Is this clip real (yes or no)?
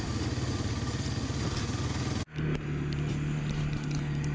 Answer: yes